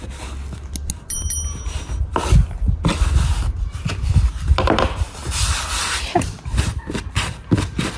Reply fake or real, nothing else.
real